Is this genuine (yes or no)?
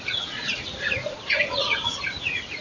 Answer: no